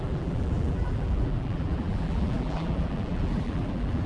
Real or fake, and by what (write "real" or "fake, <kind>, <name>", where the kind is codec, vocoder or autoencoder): fake, vocoder, BigVGAN v2